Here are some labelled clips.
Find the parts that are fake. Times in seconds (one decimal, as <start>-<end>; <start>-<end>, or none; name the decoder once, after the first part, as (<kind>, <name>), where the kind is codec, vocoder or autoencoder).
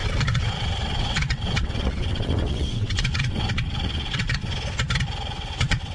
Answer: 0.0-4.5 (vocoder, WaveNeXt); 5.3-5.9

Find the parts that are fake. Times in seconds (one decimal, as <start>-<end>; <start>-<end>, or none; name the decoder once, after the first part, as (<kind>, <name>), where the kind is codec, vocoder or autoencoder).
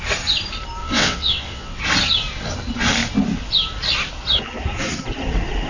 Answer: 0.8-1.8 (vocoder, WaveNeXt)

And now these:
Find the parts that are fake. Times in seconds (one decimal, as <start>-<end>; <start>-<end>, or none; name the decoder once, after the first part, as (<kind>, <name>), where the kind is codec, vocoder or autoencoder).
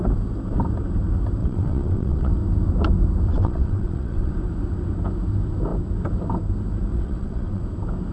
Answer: 1.4-2.3 (vocoder, WaveNeXt); 3.3-4.3; 6.9-7.6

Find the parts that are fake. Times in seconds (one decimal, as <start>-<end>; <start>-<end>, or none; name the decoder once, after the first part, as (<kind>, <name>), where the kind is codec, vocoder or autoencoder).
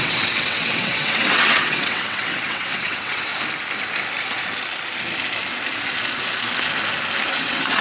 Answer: 0.0-3.3 (vocoder, WaveNeXt); 7.3-7.8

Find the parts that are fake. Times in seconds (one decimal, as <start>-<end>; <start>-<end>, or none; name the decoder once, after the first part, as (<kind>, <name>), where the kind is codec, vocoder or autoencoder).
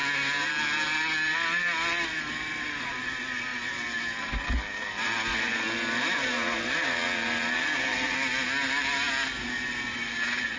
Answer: none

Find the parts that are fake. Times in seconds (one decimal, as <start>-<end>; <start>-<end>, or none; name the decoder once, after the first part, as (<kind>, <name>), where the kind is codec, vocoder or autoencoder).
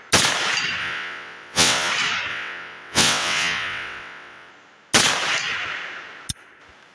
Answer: 0.8-1.9 (vocoder, WaveNeXt); 2.3-4.5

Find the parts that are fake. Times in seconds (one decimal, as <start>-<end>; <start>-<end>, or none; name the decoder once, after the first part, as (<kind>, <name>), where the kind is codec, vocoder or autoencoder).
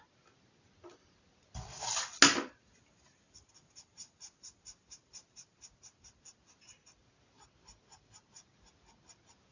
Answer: none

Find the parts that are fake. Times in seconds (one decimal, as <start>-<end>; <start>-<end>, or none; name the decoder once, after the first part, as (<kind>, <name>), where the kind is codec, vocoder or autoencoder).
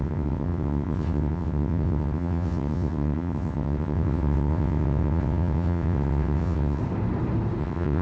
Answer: 0.0-6.8 (vocoder, WaveNeXt); 7.6-8.0